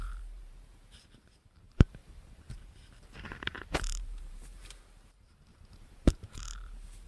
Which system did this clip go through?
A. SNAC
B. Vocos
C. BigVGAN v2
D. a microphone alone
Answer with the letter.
C